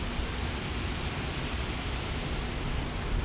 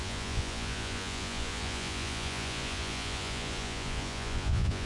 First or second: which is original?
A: first